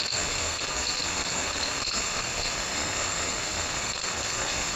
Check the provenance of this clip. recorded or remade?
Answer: remade